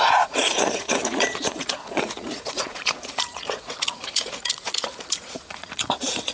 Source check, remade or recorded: remade